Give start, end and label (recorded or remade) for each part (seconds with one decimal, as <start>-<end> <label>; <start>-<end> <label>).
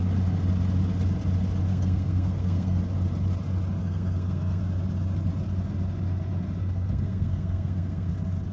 0.0-1.7 recorded; 1.7-2.8 remade; 2.8-3.8 recorded; 3.8-4.6 remade; 4.6-6.6 recorded; 6.6-8.1 remade; 8.1-8.5 recorded